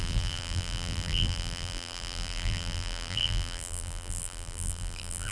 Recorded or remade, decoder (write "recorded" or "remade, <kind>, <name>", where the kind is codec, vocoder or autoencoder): remade, vocoder, BigVGAN v2